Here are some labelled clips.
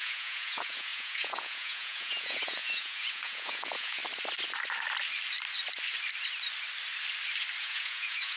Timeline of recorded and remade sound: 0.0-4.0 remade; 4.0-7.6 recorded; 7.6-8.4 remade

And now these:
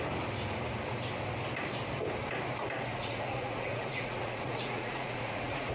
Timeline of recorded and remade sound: 0.0-2.9 recorded; 2.9-5.7 remade